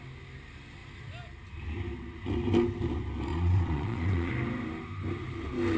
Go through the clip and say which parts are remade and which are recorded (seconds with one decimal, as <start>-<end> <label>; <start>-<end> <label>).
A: 0.0-3.3 recorded; 3.3-4.3 remade; 4.3-5.8 recorded